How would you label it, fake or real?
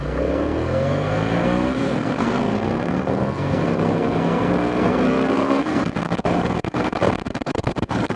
fake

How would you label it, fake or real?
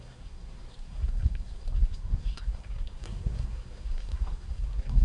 fake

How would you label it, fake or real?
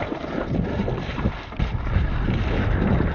real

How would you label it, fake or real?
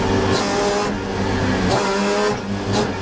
real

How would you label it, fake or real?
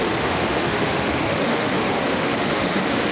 fake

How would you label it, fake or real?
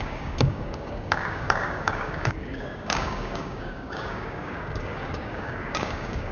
fake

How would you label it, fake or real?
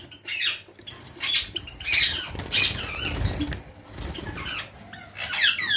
real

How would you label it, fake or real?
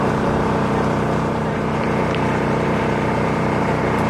fake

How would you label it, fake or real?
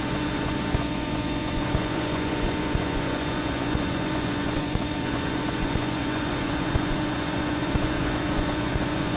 fake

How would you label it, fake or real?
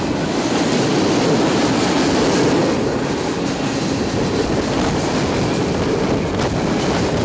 real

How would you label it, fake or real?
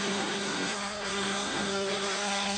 fake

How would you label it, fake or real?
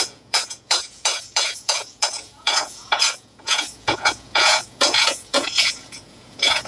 fake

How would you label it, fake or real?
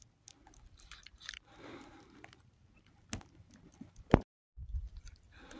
real